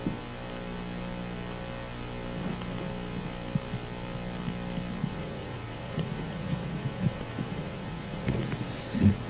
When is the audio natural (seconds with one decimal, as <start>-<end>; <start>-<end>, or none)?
0.0-5.0